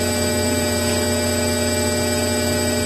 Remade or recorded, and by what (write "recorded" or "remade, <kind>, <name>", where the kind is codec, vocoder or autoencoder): recorded